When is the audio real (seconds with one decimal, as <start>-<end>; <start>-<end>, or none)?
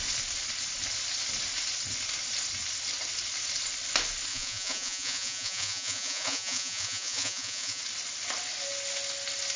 0.0-4.3; 7.8-9.6